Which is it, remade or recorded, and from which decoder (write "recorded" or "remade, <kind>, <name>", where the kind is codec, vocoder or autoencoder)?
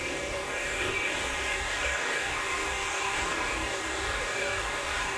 remade, codec, DAC